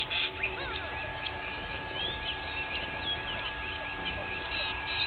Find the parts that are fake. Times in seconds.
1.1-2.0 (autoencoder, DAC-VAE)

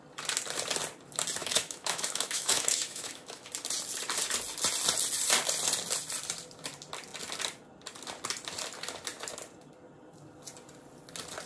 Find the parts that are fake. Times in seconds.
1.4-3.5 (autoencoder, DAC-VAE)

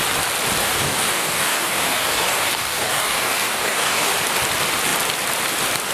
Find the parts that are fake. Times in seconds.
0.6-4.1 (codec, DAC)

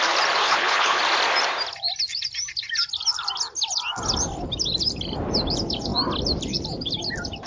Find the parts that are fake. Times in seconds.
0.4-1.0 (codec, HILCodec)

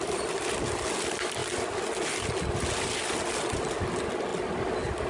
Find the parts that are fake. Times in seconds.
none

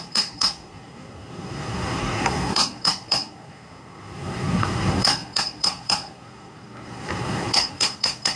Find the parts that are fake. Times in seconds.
0.0-8.3 (codec, SNAC)

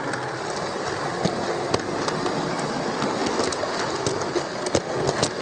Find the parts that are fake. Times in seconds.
none